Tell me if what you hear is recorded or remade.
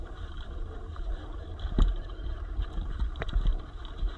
remade